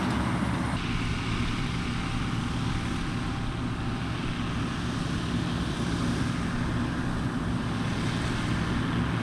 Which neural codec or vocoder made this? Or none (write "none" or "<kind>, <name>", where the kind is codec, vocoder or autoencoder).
none